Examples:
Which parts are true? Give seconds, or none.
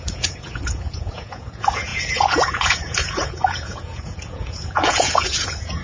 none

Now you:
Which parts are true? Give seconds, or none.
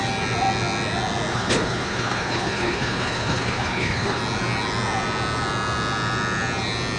0.0-1.3; 4.2-7.0